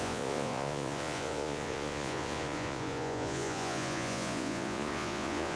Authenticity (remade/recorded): remade